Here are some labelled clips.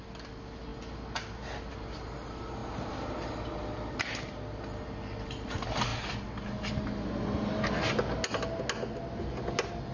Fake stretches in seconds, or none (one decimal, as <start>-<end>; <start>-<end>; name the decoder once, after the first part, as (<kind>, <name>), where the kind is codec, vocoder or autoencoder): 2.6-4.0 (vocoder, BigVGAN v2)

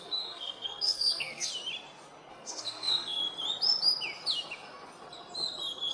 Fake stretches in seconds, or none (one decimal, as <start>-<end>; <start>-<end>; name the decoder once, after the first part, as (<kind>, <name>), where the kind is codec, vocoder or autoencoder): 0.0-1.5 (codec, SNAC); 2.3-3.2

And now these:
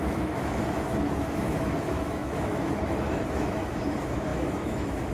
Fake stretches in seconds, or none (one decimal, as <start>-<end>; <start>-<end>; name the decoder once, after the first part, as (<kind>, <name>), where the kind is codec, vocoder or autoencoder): 0.0-5.1 (autoencoder, DAC-VAE)

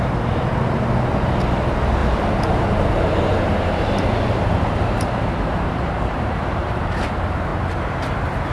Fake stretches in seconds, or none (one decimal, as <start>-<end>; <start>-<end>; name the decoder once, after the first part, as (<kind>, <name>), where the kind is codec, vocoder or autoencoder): 2.0-7.1 (vocoder, BigVGAN v2); 7.5-8.1